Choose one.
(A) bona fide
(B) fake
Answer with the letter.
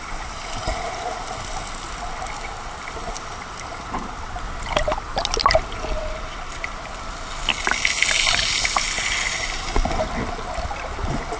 A